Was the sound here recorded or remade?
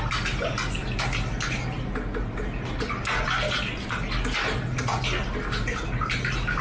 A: recorded